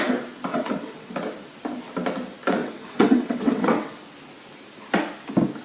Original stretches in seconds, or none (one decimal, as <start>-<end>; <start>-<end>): 0.0-0.5; 1.1-2.6; 4.0-5.6